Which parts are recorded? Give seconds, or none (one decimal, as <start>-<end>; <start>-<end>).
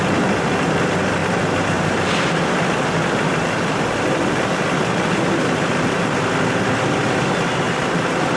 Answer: 0.0-1.2; 2.4-8.4